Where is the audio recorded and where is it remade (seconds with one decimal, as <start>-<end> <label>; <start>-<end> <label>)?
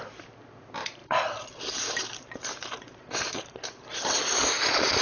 0.0-1.0 recorded; 1.0-4.0 remade; 4.0-5.0 recorded